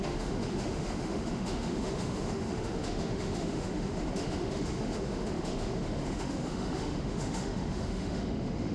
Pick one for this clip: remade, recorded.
remade